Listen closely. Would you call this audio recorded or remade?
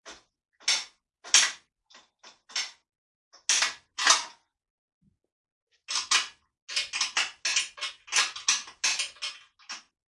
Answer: recorded